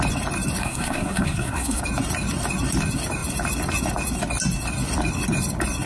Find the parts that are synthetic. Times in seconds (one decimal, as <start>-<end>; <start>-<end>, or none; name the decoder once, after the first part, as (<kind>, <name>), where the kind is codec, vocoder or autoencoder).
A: 0.6-1.8 (codec, SNAC)